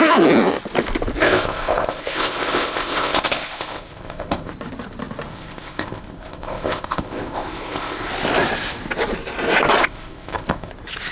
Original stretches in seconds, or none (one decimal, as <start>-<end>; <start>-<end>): 0.0-1.2; 4.5-5.3; 8.1-9.8; 10.7-11.1